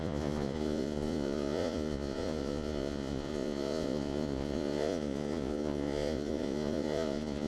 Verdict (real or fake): fake